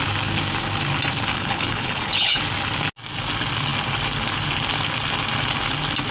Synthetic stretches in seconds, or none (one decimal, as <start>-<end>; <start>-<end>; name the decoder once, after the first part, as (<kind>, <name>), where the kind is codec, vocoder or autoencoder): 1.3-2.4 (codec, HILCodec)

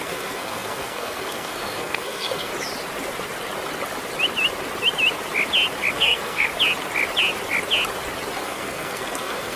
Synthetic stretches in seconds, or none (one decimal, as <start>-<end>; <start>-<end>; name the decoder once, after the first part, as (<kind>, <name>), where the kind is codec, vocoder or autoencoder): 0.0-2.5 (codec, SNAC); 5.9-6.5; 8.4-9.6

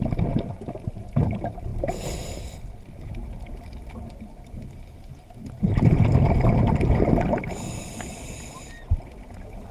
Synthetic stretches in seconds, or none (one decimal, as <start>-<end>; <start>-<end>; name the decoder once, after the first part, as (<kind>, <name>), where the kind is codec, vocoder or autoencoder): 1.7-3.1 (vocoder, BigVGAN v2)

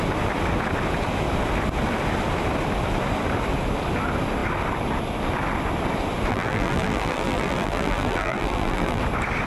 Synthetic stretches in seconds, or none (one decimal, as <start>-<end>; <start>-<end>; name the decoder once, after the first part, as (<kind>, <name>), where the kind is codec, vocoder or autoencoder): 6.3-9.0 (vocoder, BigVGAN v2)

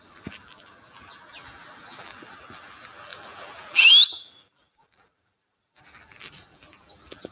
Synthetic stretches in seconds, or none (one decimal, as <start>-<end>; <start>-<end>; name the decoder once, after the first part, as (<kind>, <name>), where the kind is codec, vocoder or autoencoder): 0.0-7.3 (vocoder, BigVGAN v2)